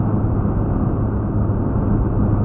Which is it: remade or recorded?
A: recorded